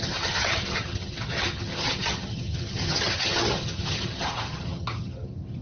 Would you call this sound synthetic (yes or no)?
yes